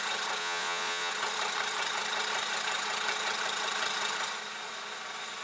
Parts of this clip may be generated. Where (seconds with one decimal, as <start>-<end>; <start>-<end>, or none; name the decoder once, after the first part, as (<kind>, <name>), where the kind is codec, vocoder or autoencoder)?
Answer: 0.4-1.1 (vocoder, Vocos)